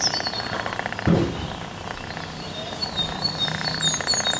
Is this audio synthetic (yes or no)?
no